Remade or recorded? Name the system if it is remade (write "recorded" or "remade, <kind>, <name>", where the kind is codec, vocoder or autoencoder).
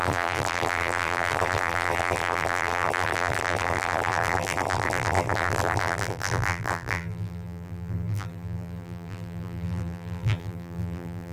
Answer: remade, vocoder, BigVGAN v2